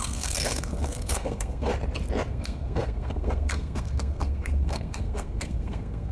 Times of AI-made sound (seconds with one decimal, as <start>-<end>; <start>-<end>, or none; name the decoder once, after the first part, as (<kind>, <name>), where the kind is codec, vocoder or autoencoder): 0.0-1.7 (codec, SNAC); 2.3-6.1